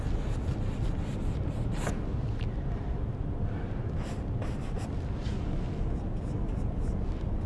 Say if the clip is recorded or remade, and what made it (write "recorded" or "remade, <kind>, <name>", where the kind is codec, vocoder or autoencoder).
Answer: recorded